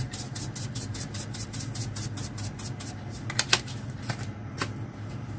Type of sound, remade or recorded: recorded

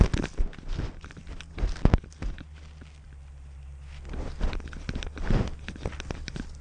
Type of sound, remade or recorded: recorded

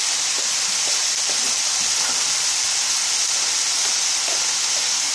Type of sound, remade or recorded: recorded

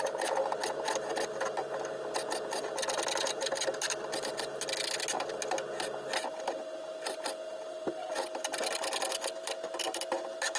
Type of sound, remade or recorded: recorded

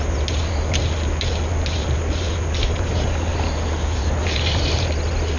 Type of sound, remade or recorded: recorded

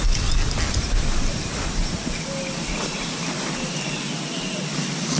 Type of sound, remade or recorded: recorded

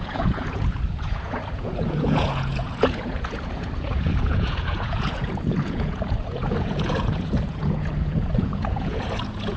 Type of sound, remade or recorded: remade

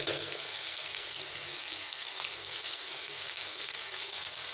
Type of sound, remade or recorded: remade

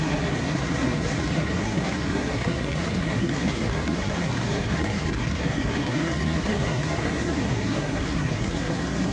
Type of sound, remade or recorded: remade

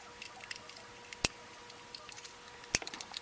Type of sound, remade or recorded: recorded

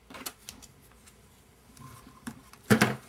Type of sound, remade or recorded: remade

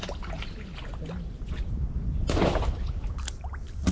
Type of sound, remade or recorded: recorded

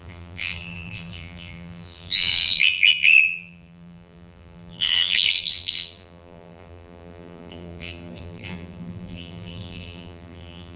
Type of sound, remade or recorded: remade